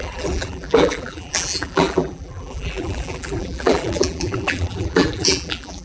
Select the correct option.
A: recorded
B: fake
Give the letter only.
B